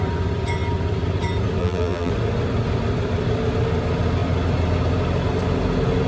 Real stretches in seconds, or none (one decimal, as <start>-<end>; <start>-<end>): 0.0-1.6; 2.1-6.1